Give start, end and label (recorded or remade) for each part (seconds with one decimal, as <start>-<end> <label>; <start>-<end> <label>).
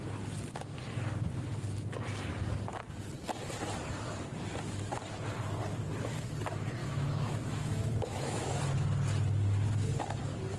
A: 0.0-6.8 recorded; 6.8-8.6 remade; 8.6-10.6 recorded